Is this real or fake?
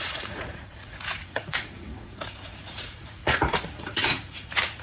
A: fake